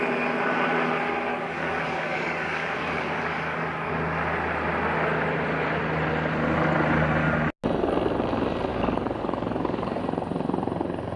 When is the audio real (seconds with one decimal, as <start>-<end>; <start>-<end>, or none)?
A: 0.0-1.3; 3.9-8.7; 10.0-11.2